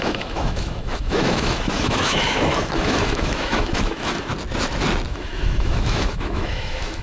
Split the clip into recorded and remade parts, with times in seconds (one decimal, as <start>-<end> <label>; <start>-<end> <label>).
0.0-4.3 remade; 4.3-5.1 recorded; 5.1-7.0 remade